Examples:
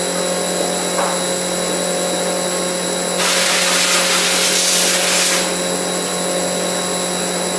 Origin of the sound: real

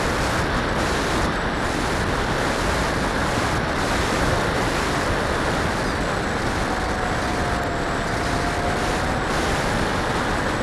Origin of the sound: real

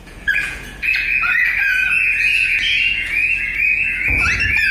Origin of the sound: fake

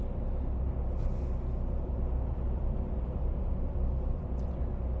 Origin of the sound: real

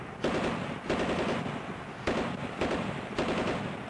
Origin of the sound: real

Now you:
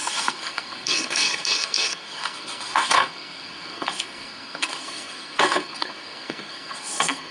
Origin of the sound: fake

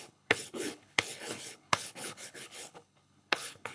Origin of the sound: fake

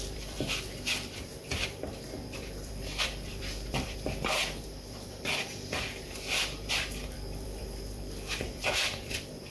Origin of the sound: fake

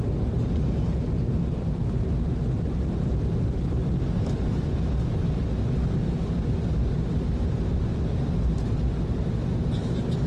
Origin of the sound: real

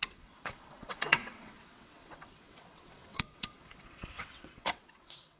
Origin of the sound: fake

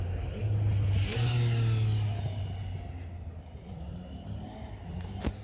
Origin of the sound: real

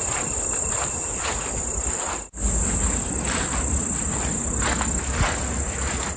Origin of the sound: real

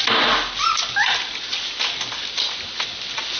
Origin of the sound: real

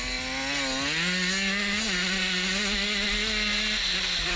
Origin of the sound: real